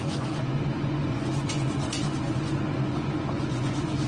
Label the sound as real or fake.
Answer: fake